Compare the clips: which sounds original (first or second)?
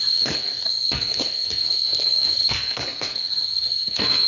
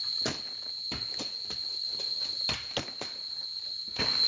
second